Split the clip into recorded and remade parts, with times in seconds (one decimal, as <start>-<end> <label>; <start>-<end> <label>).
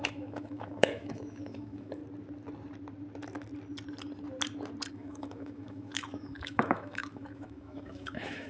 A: 0.0-2.0 remade; 2.0-4.9 recorded; 4.9-8.5 remade